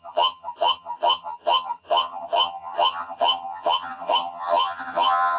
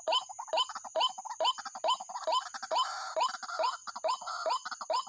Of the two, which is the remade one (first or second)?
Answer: first